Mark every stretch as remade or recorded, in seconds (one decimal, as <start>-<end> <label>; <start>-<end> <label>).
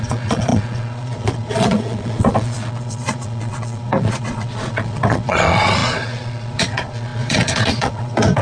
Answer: 0.0-8.4 remade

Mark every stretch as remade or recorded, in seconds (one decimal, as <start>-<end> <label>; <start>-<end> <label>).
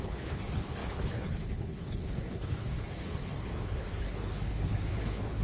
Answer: 0.0-5.4 remade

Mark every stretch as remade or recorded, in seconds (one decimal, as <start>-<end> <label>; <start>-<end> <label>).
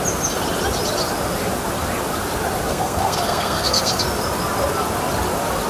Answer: 0.0-2.7 recorded; 2.7-4.0 remade; 4.0-5.7 recorded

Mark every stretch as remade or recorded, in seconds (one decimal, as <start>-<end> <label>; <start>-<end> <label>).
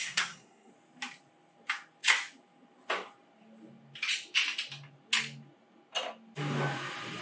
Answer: 0.0-0.7 remade; 0.7-7.2 recorded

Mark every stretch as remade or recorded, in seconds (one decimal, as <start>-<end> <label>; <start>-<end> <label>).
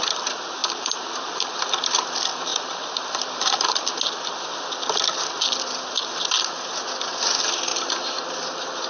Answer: 0.0-0.6 recorded; 0.6-1.7 remade; 1.7-2.5 recorded; 2.5-3.9 remade; 3.9-7.7 recorded; 7.7-8.9 remade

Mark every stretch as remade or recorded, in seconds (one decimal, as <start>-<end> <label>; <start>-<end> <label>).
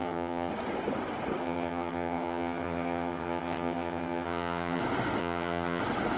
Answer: 0.0-0.5 remade; 0.5-1.4 recorded; 1.4-4.8 remade; 4.8-5.2 recorded; 5.2-5.8 remade; 5.8-6.2 recorded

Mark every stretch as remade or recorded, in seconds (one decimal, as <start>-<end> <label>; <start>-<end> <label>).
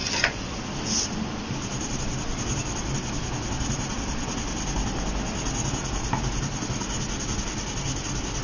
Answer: 0.0-0.6 remade; 0.6-8.4 recorded